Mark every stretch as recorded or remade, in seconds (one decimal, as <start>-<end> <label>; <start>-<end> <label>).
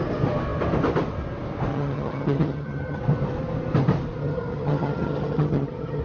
0.0-1.7 recorded; 1.7-3.0 remade; 3.0-4.2 recorded; 4.2-6.0 remade